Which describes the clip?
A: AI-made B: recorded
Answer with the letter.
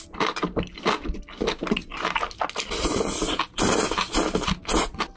B